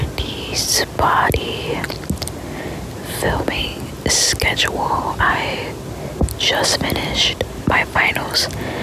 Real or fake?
real